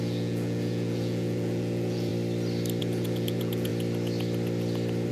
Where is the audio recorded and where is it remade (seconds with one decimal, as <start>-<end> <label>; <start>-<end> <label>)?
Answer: 0.0-2.1 remade; 2.1-2.8 recorded; 2.8-3.7 remade; 3.7-5.1 recorded